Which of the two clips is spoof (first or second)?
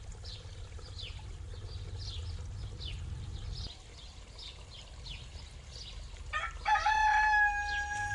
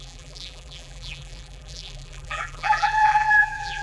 second